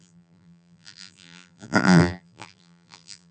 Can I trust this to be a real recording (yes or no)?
no